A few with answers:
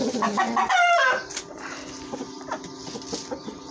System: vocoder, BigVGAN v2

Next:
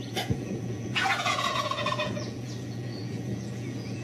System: vocoder, Vocos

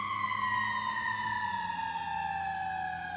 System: none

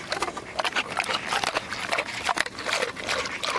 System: none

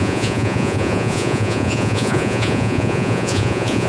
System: vocoder, Vocos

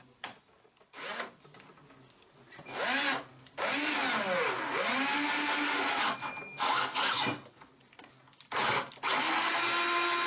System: none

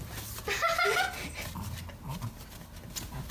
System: none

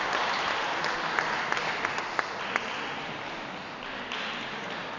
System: none